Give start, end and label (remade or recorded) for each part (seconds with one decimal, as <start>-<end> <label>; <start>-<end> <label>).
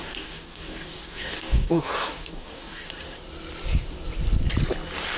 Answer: 0.0-2.9 remade; 2.9-5.2 recorded